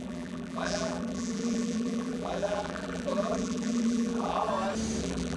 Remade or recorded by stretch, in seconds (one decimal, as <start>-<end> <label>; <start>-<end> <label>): 0.0-4.5 remade; 4.5-5.0 recorded; 5.0-5.4 remade

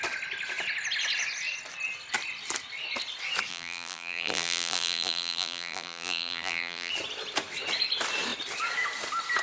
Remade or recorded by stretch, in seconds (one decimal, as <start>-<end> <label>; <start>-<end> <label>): 0.0-3.5 recorded; 3.5-6.9 remade; 6.9-9.4 recorded

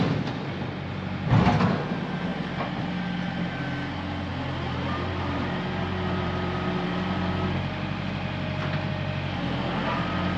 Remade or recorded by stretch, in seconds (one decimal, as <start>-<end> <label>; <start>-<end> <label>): 0.0-2.3 recorded; 2.3-2.8 remade; 2.8-4.3 recorded; 4.3-8.9 remade; 8.9-10.4 recorded

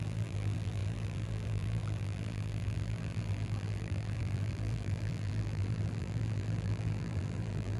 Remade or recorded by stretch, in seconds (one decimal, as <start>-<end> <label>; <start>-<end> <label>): 0.0-7.8 remade

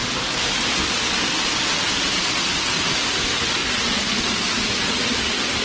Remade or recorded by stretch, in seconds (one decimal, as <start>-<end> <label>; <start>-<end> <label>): 0.0-2.9 recorded; 2.9-3.6 remade; 3.6-5.6 recorded